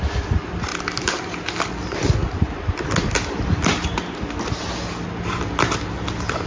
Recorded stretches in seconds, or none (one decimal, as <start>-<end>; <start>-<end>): 0.0-6.5